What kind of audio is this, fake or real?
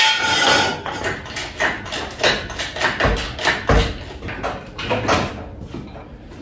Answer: real